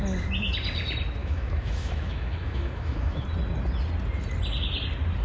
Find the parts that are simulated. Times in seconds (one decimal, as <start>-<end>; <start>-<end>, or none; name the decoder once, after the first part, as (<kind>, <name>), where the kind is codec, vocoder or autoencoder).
1.2-3.2 (autoencoder, DAC-VAE)